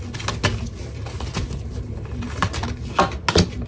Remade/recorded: recorded